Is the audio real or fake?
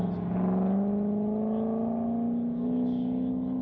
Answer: real